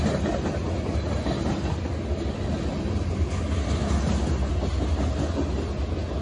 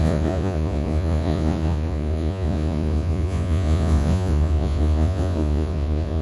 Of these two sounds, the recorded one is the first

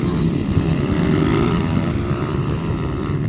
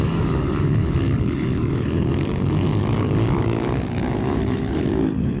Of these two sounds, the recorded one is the first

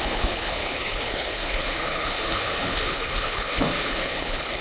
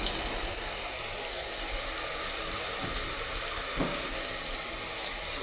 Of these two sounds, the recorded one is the second